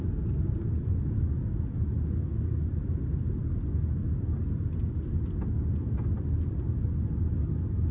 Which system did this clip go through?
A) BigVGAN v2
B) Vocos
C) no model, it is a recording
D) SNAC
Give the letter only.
C